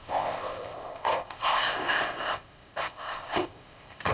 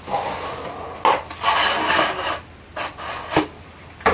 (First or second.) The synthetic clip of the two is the first